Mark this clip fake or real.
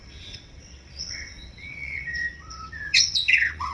fake